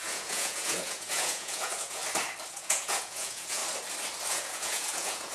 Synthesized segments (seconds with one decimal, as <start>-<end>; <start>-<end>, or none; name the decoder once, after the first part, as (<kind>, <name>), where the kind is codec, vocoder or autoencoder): 0.0-2.0 (vocoder, Vocos); 2.5-3.6; 4.3-5.3